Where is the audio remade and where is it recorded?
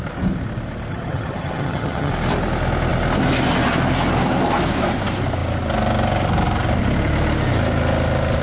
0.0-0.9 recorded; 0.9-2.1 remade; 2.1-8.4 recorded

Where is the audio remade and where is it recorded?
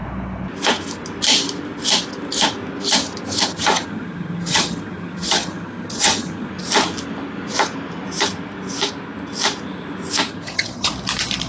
0.0-3.5 recorded; 3.5-6.5 remade; 6.5-10.3 recorded; 10.3-10.9 remade; 10.9-11.5 recorded